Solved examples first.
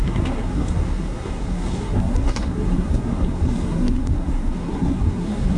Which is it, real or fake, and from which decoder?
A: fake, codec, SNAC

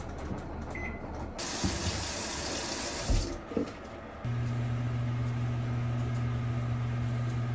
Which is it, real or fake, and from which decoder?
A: real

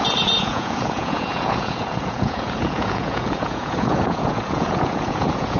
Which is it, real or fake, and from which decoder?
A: fake, vocoder, Vocos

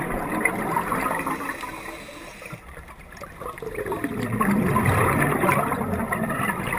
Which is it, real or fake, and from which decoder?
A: fake, vocoder, BigVGAN v2